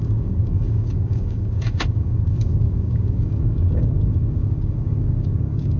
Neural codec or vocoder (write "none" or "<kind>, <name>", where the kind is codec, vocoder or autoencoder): codec, DAC